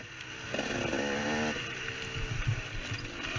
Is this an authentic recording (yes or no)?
yes